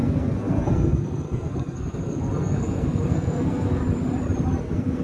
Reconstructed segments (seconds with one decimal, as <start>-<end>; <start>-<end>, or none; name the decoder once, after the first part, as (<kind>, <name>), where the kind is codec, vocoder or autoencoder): 0.0-3.8 (codec, SNAC); 4.6-5.0